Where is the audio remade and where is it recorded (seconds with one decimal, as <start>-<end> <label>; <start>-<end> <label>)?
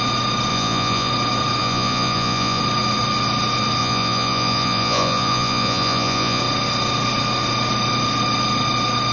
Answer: 0.0-0.5 recorded; 0.5-1.1 remade; 1.1-1.6 recorded; 1.6-2.6 remade; 2.6-3.8 recorded; 3.8-6.4 remade; 6.4-9.1 recorded